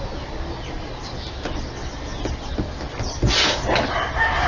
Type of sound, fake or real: real